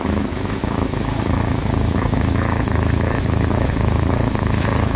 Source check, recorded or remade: remade